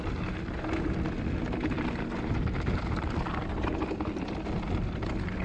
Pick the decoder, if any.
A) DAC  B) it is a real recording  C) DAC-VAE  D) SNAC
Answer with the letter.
B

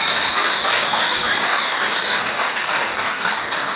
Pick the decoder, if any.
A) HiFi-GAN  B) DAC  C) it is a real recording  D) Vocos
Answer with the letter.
B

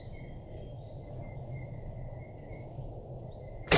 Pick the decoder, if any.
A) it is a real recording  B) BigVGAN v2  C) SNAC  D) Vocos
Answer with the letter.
A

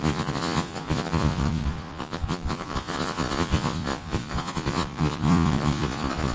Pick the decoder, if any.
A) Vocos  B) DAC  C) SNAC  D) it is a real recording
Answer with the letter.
A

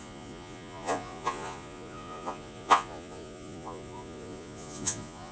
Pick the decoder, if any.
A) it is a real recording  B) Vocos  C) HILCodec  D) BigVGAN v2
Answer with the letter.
B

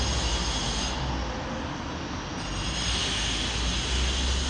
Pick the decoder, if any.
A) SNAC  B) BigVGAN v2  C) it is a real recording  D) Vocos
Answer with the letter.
C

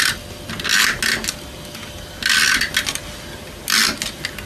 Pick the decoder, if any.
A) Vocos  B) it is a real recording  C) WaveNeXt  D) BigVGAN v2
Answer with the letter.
B